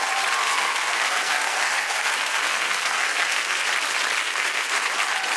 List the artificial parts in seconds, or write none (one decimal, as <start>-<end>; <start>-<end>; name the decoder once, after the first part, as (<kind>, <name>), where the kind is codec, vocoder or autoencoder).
0.4-3.6 (codec, SNAC); 4.2-4.9